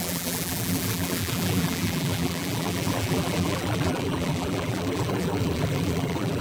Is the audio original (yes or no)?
no